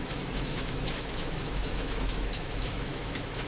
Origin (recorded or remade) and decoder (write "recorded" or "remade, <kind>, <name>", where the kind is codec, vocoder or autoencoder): remade, autoencoder, DAC-VAE